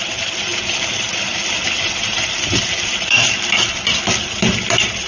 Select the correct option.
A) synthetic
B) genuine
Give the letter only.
A